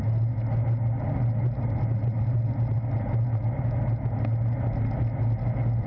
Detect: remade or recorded recorded